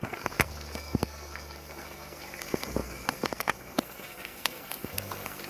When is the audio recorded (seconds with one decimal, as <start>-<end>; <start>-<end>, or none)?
none